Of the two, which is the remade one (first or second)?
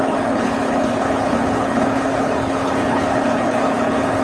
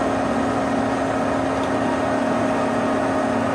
first